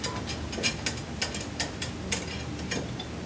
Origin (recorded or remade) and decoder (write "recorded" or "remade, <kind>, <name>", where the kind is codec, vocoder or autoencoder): recorded